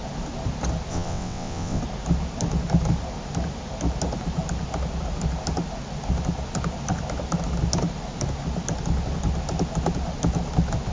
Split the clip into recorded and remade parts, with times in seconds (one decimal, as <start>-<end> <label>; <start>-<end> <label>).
0.0-0.9 recorded; 0.9-1.8 remade; 1.8-10.9 recorded